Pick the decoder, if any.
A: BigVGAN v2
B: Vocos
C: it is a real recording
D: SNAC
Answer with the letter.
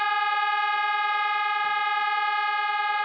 C